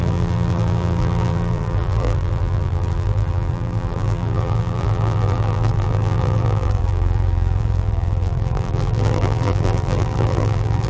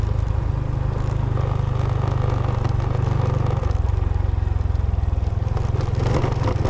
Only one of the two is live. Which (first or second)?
second